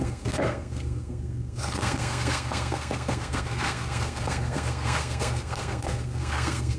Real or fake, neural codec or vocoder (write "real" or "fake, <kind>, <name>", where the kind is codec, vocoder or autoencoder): fake, codec, SNAC